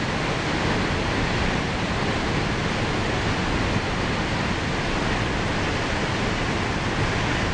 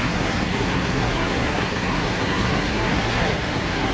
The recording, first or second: first